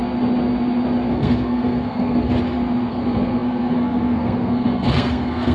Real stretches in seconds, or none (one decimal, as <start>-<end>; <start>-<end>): 0.0-1.1; 2.3-2.9